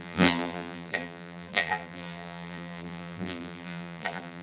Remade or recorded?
remade